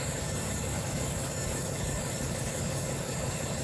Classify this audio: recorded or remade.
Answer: remade